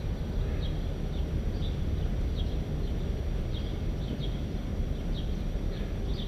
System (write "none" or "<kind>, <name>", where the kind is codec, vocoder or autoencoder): none